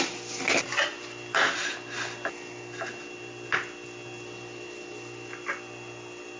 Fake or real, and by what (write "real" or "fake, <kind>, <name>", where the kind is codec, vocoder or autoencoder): real